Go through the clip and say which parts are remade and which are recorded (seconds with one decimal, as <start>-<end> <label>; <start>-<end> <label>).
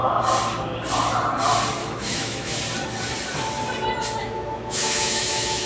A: 0.0-1.8 recorded; 1.8-2.6 remade; 2.6-4.2 recorded; 4.2-5.7 remade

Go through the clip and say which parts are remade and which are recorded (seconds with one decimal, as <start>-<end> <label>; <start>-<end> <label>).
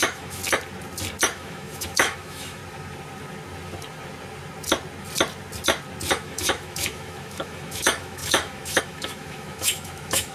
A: 0.0-0.4 remade; 0.4-1.3 recorded; 1.3-2.6 remade; 2.6-6.1 recorded; 6.1-10.3 remade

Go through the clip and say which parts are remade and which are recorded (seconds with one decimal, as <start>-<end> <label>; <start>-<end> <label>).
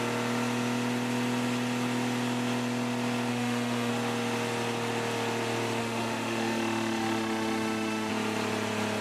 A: 0.0-3.3 recorded; 3.3-3.9 remade; 3.9-5.8 recorded; 5.8-8.1 remade; 8.1-9.0 recorded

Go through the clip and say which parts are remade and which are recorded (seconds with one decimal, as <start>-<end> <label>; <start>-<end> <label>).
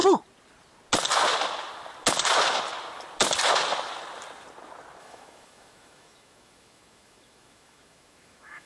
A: 0.0-5.0 recorded; 5.0-8.7 remade